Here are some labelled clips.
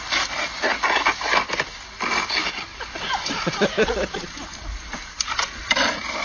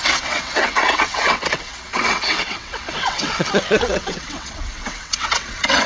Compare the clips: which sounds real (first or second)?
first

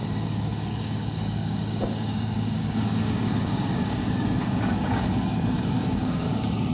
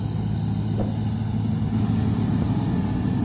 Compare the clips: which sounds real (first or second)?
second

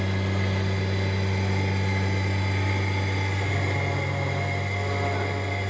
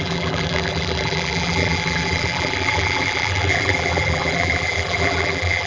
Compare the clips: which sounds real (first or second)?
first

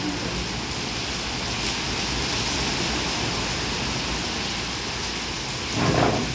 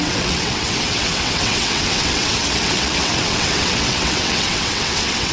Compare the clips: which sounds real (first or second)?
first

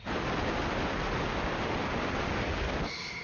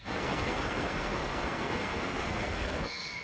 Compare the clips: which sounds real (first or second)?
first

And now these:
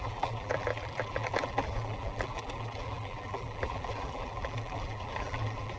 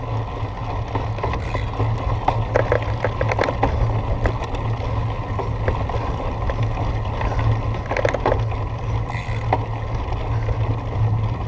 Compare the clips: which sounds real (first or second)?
second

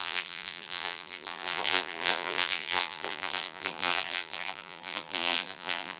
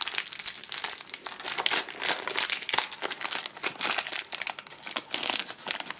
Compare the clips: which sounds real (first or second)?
second